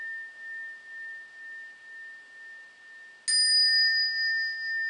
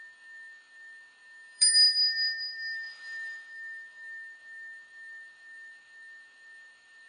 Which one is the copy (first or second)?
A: second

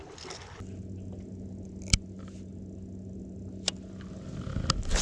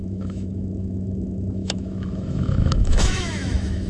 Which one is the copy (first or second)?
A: second